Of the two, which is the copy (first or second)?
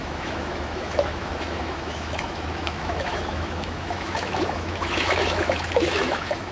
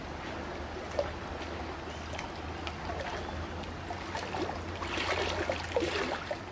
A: first